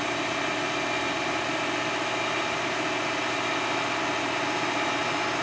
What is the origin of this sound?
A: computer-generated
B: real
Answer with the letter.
B